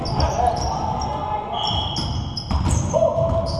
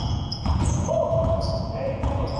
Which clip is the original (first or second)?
first